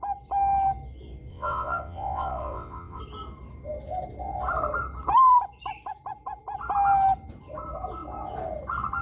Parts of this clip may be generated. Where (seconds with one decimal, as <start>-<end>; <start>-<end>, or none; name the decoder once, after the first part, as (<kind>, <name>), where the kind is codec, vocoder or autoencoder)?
1.3-3.0 (vocoder, WaveNeXt)